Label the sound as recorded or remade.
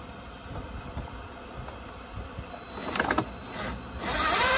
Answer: recorded